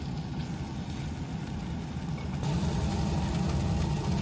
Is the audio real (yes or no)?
yes